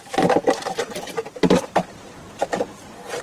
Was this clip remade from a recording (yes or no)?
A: no